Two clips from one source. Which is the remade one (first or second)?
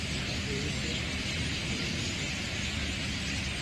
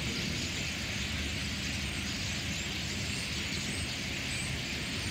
first